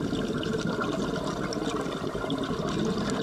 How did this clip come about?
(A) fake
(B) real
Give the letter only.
B